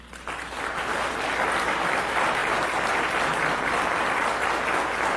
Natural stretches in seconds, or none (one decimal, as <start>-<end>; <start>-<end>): 0.0-5.2

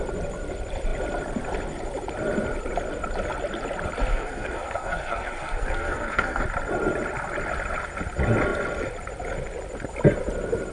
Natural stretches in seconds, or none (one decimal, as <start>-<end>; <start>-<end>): 0.0-4.1; 6.4-10.7

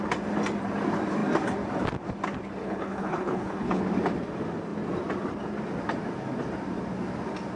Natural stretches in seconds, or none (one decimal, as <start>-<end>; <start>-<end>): 0.0-2.6; 3.8-7.6

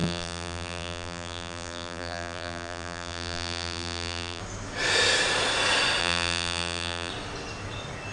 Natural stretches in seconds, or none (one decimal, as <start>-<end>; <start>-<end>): 4.4-6.0; 7.1-8.1

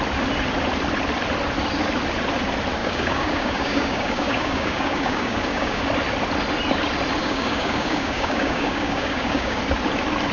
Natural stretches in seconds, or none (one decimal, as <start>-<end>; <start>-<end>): 0.0-2.8; 5.9-7.2; 9.6-10.3

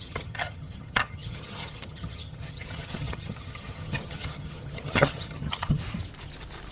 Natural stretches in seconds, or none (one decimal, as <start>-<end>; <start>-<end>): 5.8-6.7